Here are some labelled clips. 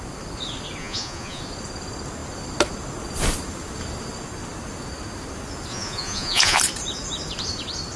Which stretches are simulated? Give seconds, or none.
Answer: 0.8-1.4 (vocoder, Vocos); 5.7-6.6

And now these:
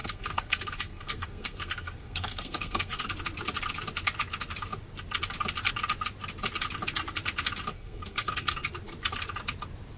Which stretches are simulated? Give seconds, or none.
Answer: 0.0-3.1 (codec, SNAC); 7.7-8.7

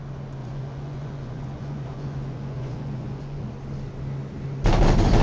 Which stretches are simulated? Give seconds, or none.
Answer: 0.4-3.5 (vocoder, Vocos)

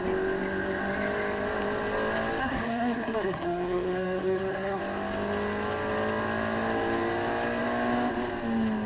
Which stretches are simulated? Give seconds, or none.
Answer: 2.4-4.8 (codec, SNAC)

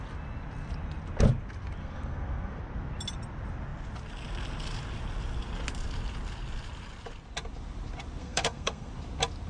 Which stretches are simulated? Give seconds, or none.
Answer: 1.8-2.6 (codec, SNAC); 8.2-8.9

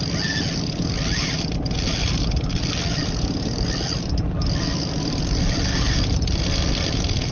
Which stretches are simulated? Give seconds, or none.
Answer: none